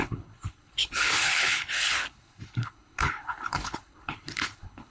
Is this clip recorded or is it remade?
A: remade